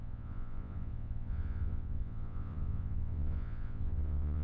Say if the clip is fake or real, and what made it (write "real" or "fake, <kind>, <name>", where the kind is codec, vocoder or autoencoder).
fake, vocoder, Vocos